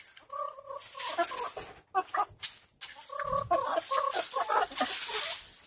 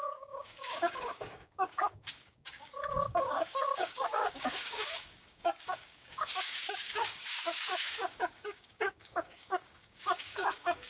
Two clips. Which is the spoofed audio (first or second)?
second